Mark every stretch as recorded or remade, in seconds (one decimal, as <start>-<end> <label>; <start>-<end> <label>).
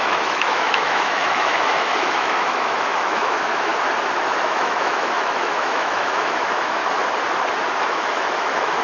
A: 0.0-3.7 remade; 3.7-4.2 recorded; 4.2-6.8 remade; 6.8-7.8 recorded; 7.8-8.8 remade